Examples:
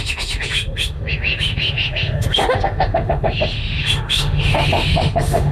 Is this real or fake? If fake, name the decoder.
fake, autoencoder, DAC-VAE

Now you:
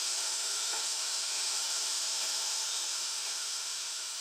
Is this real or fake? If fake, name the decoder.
fake, autoencoder, DAC-VAE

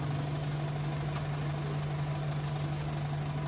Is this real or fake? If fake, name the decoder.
real